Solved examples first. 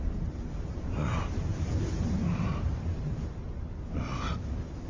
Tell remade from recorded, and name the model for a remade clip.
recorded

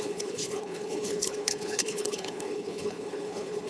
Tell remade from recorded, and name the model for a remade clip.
remade, codec, HILCodec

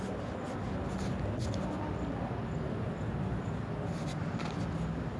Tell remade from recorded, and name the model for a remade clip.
recorded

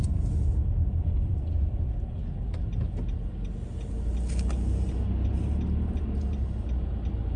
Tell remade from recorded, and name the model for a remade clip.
recorded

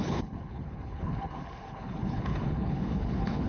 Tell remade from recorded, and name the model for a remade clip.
remade, codec, HILCodec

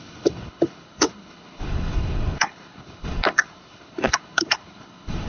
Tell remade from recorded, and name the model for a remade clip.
remade, codec, HILCodec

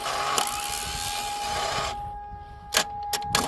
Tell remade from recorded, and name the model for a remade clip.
recorded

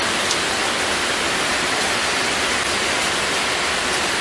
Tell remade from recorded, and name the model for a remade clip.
recorded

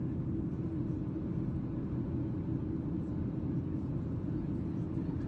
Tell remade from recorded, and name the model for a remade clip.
recorded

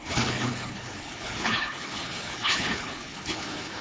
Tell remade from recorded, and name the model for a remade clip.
remade, codec, HILCodec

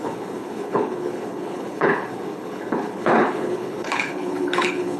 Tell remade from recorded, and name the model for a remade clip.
remade, codec, HILCodec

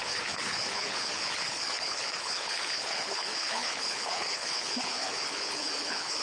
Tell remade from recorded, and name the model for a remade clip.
remade, codec, HILCodec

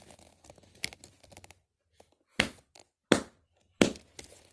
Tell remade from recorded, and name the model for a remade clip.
recorded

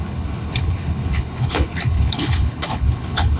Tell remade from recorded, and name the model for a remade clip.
remade, codec, HILCodec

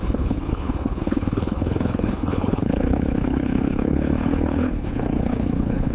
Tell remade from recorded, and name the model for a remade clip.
remade, codec, HILCodec